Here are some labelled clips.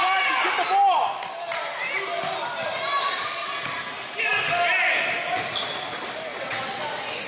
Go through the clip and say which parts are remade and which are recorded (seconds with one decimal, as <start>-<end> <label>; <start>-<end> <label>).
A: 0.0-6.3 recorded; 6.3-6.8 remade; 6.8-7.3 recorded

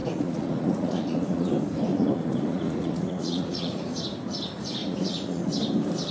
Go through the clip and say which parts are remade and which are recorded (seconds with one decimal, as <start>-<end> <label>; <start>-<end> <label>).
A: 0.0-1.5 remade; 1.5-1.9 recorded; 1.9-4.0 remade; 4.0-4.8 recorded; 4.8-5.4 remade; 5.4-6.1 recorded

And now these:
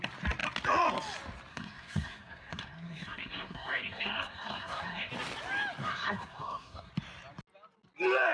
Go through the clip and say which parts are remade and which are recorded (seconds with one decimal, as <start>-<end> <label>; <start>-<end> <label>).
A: 0.0-1.5 recorded; 1.5-5.1 remade; 5.1-5.8 recorded; 5.8-6.9 remade; 6.9-8.3 recorded